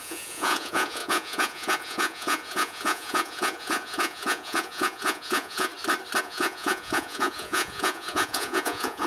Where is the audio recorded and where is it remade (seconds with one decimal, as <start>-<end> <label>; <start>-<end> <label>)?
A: 0.0-5.7 remade; 5.7-6.2 recorded; 6.2-9.1 remade